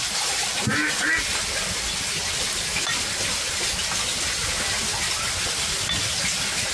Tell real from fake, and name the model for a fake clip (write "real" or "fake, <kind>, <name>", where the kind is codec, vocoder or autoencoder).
real